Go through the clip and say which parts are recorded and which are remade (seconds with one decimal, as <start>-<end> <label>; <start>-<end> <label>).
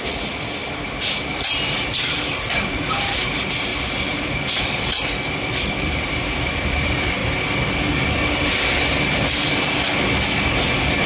0.0-3.7 remade; 3.7-4.2 recorded; 4.2-7.2 remade; 7.2-11.1 recorded